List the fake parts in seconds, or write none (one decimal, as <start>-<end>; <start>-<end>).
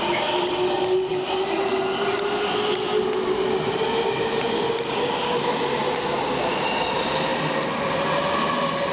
none